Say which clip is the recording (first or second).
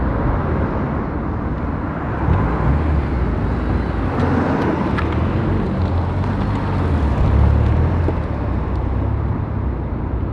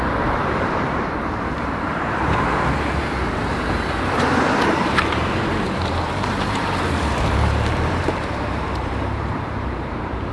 first